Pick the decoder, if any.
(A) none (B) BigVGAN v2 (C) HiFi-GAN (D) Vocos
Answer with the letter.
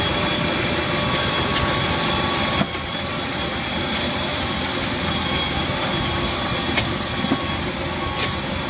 A